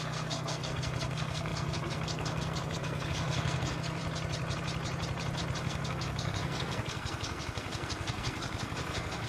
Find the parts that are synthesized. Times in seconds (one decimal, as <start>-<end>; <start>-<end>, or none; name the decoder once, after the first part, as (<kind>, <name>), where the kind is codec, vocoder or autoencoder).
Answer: 0.0-4.0 (codec, SNAC); 5.6-9.3